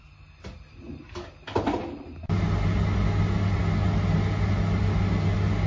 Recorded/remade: recorded